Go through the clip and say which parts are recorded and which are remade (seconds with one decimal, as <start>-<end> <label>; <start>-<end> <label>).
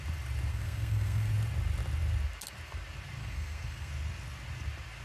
0.0-0.5 recorded; 0.5-1.3 remade; 1.3-3.2 recorded; 3.2-3.9 remade; 3.9-5.0 recorded